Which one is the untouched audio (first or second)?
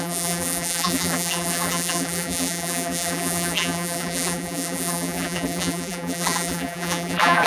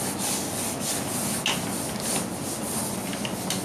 second